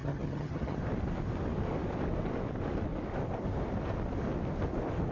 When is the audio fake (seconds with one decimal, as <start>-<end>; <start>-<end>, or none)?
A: 0.0-0.8